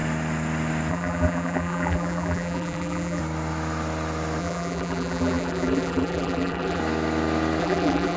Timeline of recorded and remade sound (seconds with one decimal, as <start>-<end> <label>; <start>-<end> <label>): 0.0-0.9 recorded; 0.9-3.2 remade; 3.2-4.4 recorded; 4.4-6.8 remade; 6.8-7.6 recorded; 7.6-8.2 remade